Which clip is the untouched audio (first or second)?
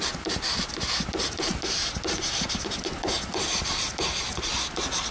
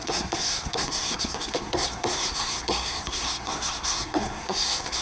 first